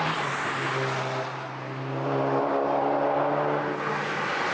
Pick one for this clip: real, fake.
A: real